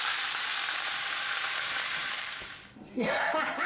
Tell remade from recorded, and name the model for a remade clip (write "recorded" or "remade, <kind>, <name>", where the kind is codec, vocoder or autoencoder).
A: remade, vocoder, BigVGAN v2